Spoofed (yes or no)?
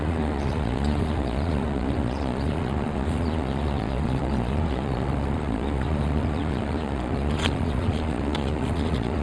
yes